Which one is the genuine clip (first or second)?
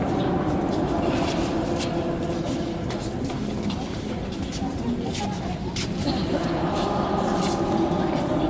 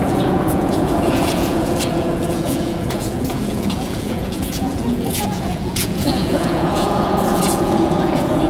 first